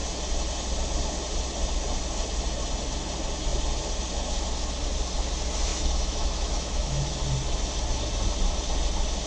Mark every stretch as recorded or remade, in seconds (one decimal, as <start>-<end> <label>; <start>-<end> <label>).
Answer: 0.0-5.7 recorded; 5.7-7.2 remade; 7.2-9.3 recorded